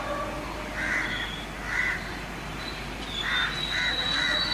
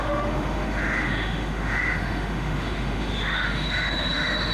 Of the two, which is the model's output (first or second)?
second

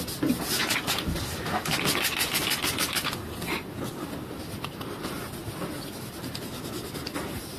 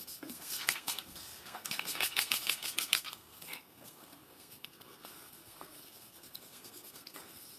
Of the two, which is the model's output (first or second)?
second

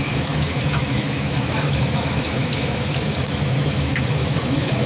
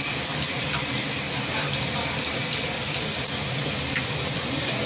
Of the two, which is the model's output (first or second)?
first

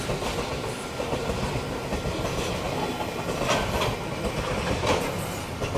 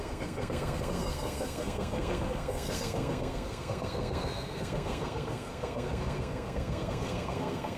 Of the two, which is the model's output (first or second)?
second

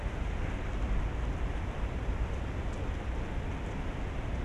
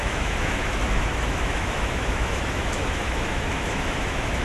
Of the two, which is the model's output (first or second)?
second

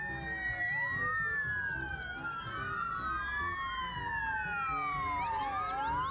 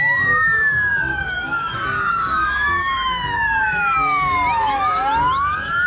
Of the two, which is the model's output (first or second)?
second